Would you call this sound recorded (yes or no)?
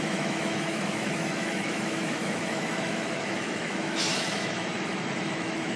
no